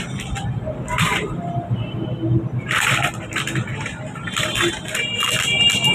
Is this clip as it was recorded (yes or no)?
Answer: yes